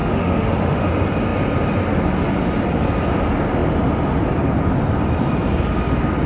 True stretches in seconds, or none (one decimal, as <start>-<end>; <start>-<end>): 0.9-6.3